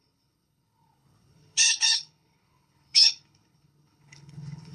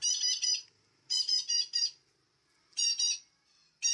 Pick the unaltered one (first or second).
second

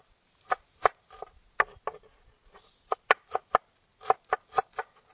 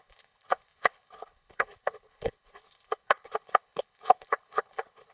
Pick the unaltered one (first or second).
first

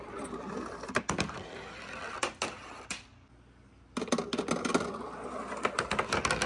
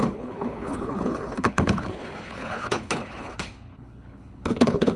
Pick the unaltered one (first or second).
first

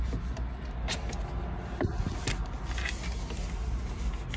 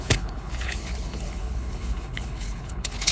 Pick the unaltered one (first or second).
first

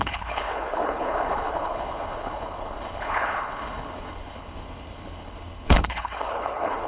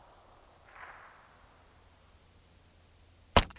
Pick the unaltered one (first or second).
second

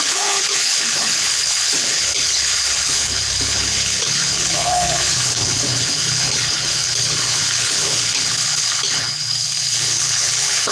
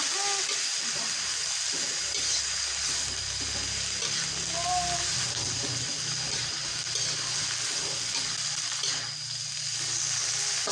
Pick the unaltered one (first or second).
second